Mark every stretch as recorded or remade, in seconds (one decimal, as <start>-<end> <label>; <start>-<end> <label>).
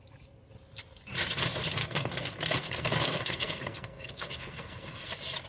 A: 0.0-1.8 recorded; 1.8-5.1 remade; 5.1-5.5 recorded